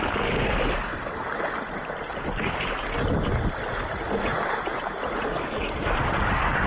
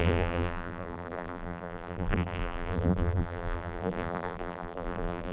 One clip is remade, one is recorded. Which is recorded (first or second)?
first